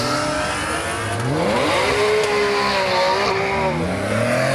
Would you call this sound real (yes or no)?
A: yes